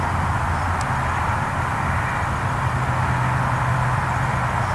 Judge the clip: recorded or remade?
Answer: recorded